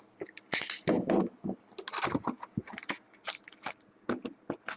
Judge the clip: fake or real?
real